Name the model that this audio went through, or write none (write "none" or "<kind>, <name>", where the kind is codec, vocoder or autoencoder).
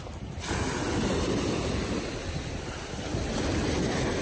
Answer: none